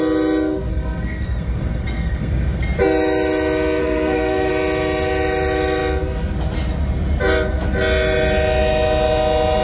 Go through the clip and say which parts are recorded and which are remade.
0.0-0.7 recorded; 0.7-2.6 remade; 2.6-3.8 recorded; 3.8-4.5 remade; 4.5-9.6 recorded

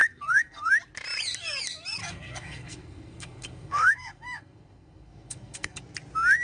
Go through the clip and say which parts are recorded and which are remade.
0.0-0.7 remade; 0.7-2.0 recorded; 2.0-5.8 remade; 5.8-6.4 recorded

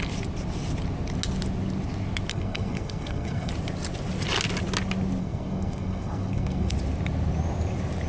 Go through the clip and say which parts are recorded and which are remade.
0.0-2.3 recorded; 2.3-3.5 remade; 3.5-5.2 recorded; 5.2-6.7 remade; 6.7-8.1 recorded

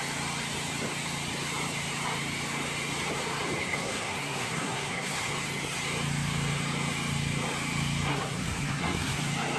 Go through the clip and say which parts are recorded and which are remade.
0.0-3.6 recorded; 3.6-5.3 remade; 5.3-8.1 recorded; 8.1-9.2 remade; 9.2-9.6 recorded

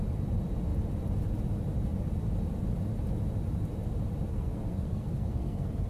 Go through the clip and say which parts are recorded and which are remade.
0.0-4.3 recorded; 4.3-5.9 remade

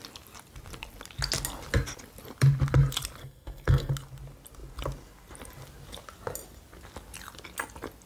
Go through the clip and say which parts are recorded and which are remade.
0.0-3.2 recorded; 3.2-3.9 remade; 3.9-8.1 recorded

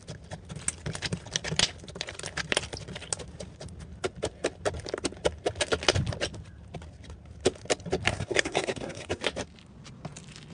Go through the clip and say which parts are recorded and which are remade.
0.0-8.1 recorded; 8.1-9.2 remade; 9.2-10.5 recorded